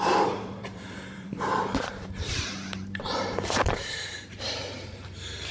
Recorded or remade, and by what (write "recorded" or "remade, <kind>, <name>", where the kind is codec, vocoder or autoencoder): remade, vocoder, BigVGAN v2